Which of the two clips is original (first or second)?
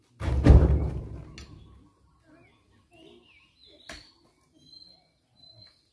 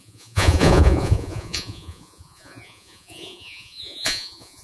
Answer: first